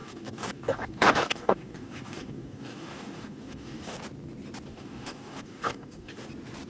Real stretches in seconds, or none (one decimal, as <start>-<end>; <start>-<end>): 4.0-4.7; 6.3-6.7